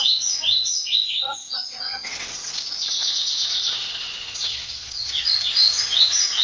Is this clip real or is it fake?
fake